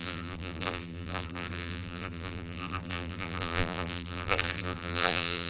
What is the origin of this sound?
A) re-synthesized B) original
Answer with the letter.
A